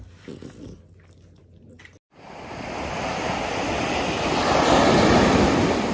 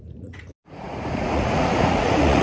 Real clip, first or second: first